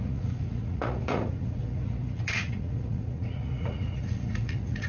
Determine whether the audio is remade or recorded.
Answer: remade